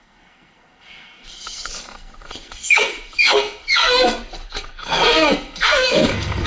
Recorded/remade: remade